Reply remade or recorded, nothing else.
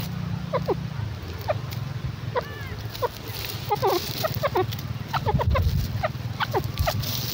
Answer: recorded